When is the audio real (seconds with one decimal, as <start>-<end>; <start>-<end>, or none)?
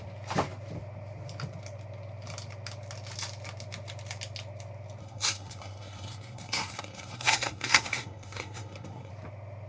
0.0-5.0; 9.1-9.7